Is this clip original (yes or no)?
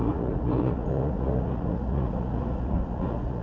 no